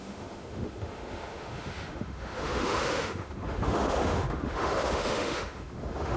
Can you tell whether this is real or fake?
fake